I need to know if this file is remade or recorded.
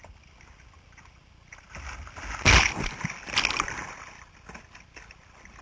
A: recorded